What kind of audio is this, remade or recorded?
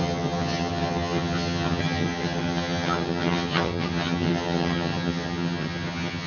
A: remade